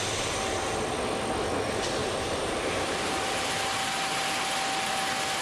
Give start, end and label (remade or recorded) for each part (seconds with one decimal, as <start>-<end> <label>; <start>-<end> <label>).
0.0-2.0 recorded; 2.0-3.1 remade; 3.1-5.4 recorded